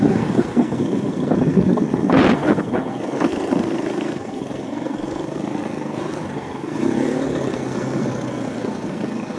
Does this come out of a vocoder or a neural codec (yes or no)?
yes